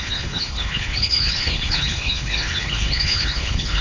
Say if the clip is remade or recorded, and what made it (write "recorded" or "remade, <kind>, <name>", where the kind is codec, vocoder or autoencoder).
remade, codec, HILCodec